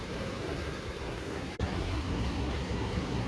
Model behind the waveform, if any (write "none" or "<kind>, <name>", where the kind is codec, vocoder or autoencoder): codec, SNAC